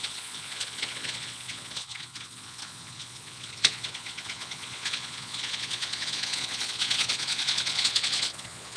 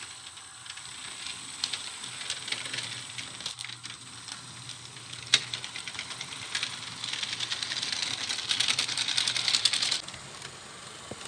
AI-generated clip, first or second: first